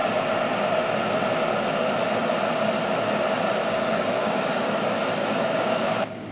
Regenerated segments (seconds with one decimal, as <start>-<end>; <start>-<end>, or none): 3.6-4.5; 5.2-6.3